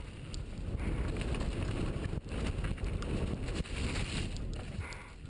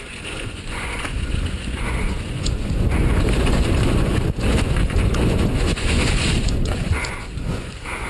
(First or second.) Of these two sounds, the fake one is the second